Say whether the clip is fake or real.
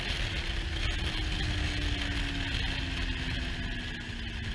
real